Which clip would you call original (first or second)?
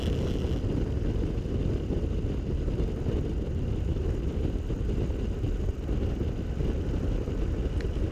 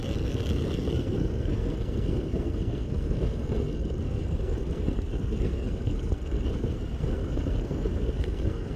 first